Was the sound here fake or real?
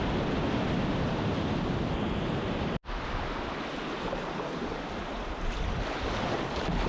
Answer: real